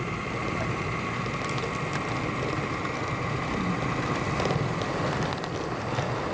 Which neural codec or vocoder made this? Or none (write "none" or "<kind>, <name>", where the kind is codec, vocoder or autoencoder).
none